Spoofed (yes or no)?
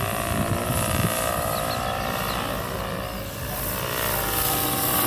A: no